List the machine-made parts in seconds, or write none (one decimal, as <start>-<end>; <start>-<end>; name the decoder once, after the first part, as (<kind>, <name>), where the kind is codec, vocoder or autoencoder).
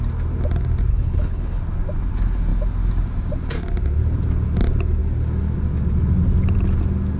0.9-1.6 (codec, HILCodec)